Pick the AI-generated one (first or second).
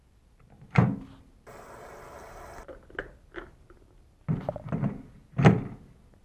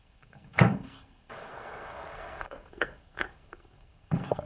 second